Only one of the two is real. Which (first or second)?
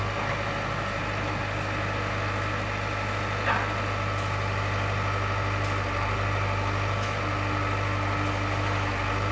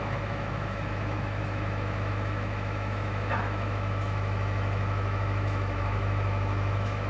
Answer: first